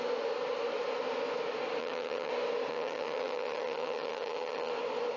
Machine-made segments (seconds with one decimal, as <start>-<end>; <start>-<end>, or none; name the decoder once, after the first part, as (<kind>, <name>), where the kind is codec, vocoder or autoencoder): 1.8-2.3 (vocoder, HiFi-GAN); 2.7-4.7